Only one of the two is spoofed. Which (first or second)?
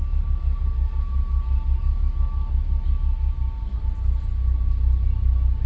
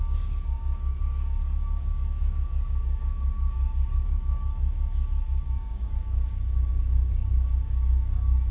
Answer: second